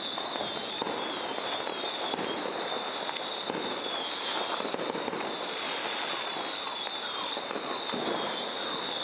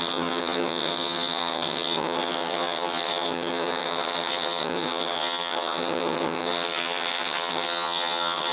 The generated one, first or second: second